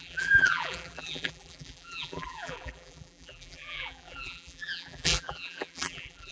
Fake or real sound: fake